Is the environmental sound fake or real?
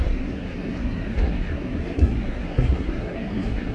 fake